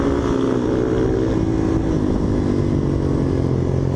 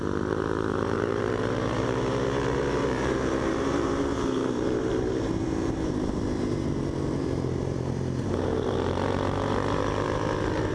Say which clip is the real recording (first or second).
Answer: first